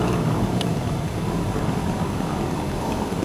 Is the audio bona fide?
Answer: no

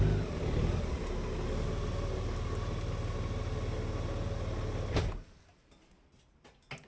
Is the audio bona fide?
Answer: yes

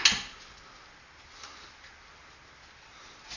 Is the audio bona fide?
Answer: yes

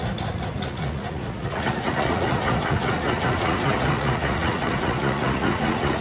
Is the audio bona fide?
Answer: no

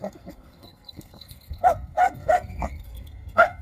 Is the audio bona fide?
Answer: no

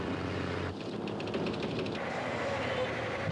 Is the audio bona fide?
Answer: no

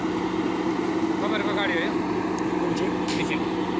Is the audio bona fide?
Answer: no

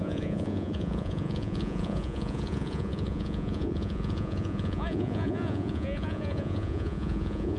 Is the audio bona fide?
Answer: no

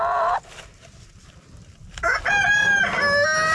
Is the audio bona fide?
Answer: yes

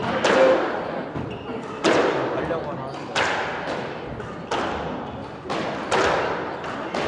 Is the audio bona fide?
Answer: yes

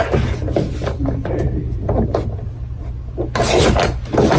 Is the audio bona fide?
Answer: yes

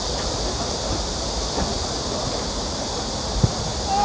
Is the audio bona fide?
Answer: yes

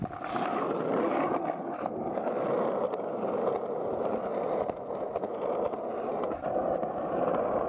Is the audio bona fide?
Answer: yes